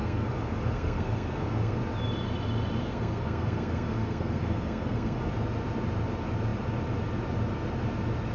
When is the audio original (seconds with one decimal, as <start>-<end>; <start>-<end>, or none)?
1.8-2.8; 5.3-8.3